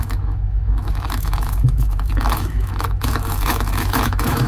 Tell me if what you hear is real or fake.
fake